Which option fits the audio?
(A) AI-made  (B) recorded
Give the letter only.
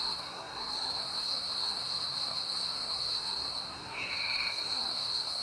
A